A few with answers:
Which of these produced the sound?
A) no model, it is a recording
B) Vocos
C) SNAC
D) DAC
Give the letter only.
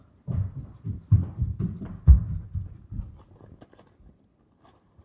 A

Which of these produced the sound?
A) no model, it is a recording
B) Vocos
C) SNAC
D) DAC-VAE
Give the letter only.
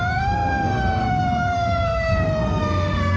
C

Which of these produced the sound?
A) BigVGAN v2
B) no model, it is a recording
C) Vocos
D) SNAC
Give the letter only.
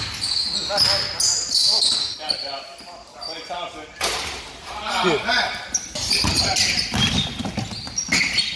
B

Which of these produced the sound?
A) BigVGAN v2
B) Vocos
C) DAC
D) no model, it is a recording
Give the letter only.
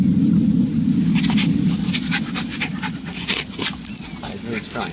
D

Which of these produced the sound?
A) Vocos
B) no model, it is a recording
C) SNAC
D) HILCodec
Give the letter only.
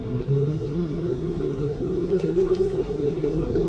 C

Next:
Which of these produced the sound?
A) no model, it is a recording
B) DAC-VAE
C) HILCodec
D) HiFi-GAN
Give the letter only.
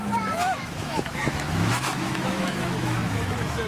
B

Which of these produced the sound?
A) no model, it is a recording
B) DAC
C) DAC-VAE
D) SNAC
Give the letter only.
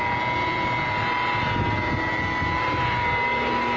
A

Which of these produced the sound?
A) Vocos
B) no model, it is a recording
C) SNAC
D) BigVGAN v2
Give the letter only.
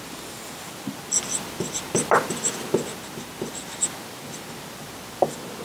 B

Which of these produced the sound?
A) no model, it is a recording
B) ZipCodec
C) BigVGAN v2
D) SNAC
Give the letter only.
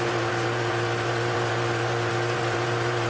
C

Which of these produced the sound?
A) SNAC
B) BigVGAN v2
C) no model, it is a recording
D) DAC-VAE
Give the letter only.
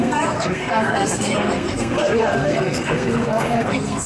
A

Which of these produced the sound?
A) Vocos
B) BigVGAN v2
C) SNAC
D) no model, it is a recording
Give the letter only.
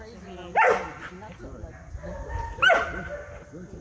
D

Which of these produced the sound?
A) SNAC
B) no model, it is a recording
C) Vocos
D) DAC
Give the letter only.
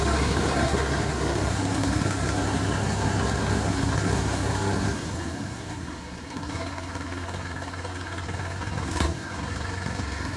A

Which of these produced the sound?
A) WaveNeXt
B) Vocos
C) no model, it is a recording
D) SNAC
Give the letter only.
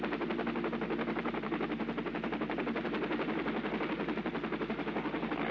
C